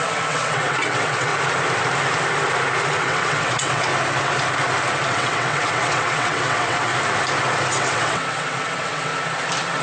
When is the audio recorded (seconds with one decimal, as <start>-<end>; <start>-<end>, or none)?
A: 1.3-3.0; 3.9-5.1; 6.9-7.8; 9.1-9.8